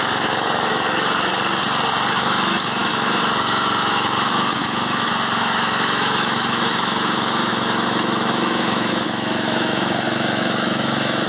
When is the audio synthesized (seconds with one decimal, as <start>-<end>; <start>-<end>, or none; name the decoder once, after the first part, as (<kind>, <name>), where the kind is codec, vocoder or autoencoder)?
0.0-1.3 (autoencoder, DAC-VAE); 2.1-11.3